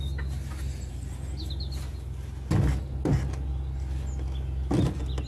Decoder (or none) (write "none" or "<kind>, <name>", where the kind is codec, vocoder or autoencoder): none